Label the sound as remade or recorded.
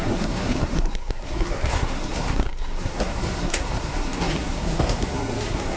remade